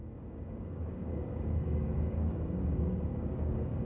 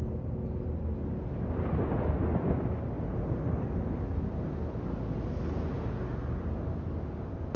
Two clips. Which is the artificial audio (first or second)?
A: first